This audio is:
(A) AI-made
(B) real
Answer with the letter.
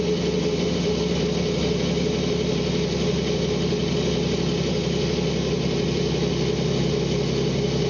B